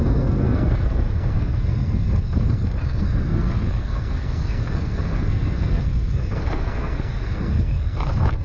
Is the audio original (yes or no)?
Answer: no